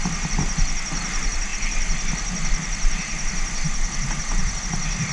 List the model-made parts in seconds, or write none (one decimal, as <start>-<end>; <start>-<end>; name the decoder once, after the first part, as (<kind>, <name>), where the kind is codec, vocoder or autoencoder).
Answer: none